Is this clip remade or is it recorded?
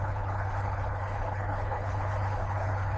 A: remade